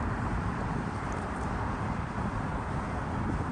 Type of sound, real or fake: fake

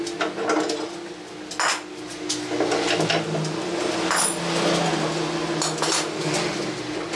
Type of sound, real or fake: real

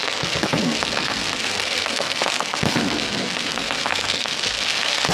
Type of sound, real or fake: fake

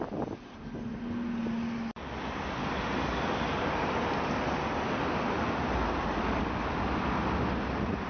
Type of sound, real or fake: real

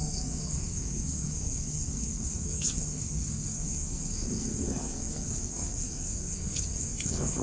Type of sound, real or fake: fake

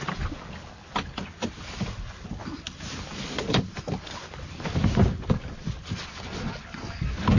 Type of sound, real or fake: real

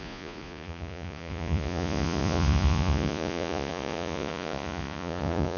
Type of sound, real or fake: fake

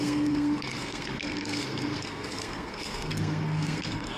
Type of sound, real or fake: fake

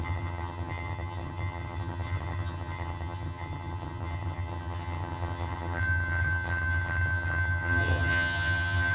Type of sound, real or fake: fake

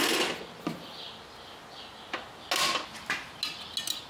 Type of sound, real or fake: real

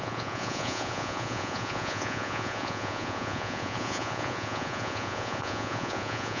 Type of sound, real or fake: fake